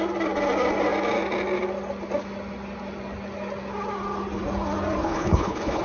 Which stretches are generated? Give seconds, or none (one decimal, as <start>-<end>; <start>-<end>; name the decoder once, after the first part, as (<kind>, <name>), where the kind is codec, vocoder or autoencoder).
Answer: 5.0-5.8 (codec, HILCodec)